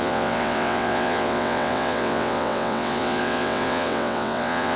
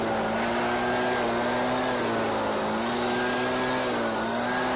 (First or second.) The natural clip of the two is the second